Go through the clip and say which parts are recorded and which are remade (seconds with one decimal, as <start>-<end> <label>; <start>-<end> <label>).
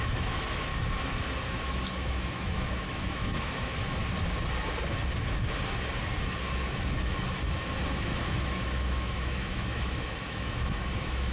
0.0-0.7 remade; 0.7-1.5 recorded; 1.5-4.0 remade; 4.0-7.9 recorded; 7.9-11.3 remade